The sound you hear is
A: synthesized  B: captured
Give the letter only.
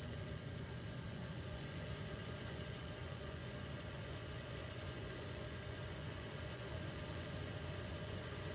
A